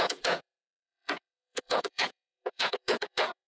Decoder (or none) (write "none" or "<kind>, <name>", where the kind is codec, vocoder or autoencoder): vocoder, Vocos